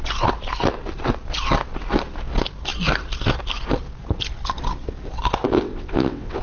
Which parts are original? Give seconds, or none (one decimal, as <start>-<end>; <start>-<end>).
0.0-5.5